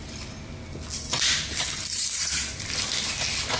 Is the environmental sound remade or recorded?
recorded